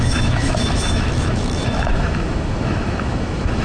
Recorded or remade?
remade